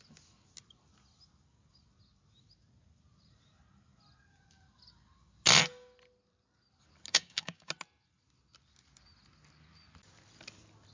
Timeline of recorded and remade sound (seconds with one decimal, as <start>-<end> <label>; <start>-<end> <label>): 0.0-7.1 recorded; 7.1-7.7 remade; 7.7-10.9 recorded